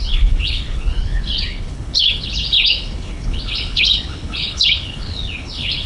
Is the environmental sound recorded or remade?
remade